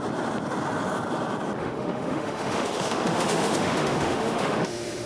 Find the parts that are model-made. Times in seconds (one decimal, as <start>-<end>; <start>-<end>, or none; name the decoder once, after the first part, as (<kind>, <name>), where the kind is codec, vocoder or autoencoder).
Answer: 1.6-5.1 (autoencoder, DAC-VAE)